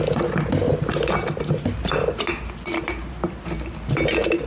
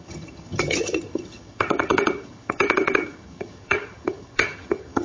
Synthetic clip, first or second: second